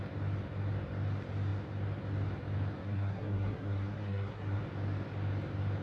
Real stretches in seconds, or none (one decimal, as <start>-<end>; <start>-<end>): 0.0-2.8; 4.6-5.8